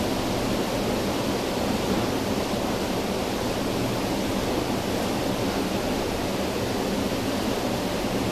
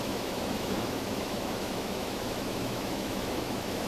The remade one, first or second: second